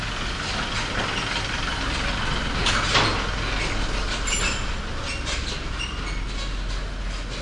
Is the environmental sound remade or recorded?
recorded